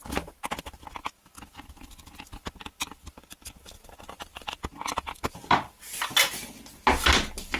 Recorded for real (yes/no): yes